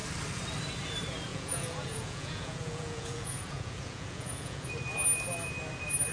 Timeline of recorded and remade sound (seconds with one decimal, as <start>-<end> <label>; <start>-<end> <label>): 0.0-1.3 recorded; 1.3-4.7 remade; 4.7-6.1 recorded